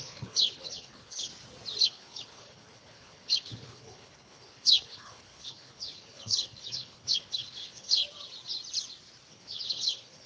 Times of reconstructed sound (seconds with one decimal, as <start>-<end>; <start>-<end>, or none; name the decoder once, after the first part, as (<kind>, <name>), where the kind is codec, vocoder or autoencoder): 0.0-1.3 (codec, HILCodec); 1.8-8.0; 9.3-10.3